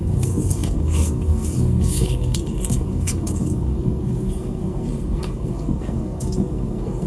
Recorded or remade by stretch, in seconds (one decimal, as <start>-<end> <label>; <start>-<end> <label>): 0.0-7.1 remade